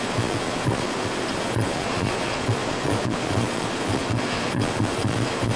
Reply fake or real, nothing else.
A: fake